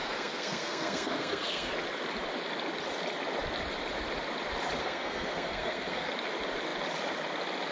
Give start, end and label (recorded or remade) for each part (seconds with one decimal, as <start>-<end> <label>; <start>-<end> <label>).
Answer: 0.0-1.7 remade; 1.7-4.8 recorded; 4.8-6.1 remade; 6.1-7.7 recorded